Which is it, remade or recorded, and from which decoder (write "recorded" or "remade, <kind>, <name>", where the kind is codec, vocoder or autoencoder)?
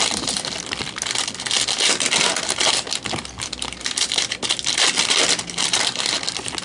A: recorded